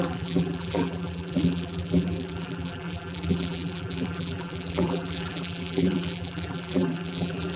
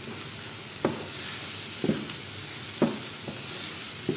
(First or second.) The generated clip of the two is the first